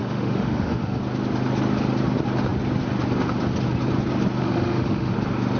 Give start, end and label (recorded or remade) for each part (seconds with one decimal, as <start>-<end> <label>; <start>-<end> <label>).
0.0-1.0 remade; 1.0-4.4 recorded; 4.4-5.1 remade; 5.1-5.6 recorded